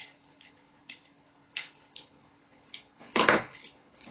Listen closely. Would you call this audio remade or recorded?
remade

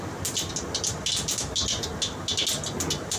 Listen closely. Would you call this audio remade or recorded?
recorded